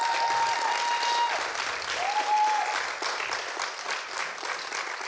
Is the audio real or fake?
real